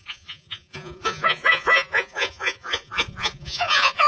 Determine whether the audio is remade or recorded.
remade